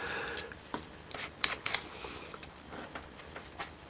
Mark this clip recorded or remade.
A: recorded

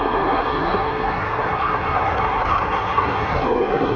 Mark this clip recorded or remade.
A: remade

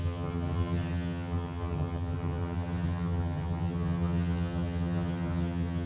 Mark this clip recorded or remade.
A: remade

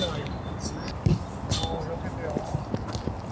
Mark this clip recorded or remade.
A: recorded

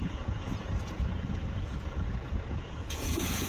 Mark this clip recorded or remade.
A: remade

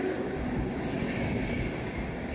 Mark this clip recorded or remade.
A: remade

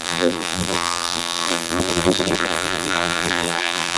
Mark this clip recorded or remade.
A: remade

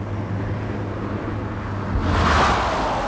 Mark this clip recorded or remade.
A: recorded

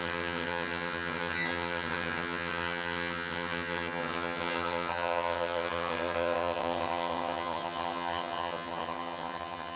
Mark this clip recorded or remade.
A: remade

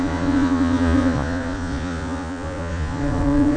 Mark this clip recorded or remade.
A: remade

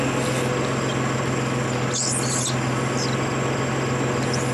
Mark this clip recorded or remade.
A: recorded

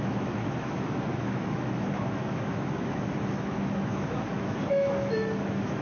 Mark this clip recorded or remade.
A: remade